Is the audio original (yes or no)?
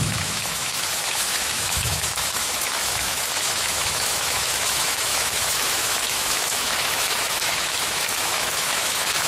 no